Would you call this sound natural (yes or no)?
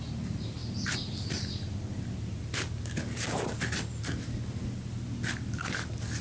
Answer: yes